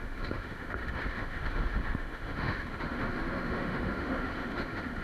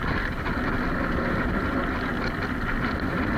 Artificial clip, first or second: first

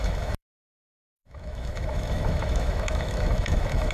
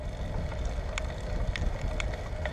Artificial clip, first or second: first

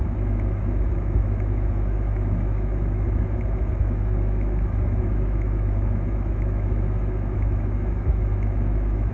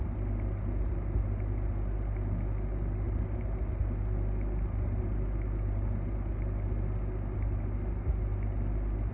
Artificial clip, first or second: first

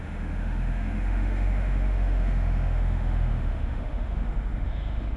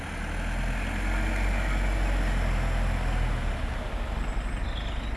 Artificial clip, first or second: first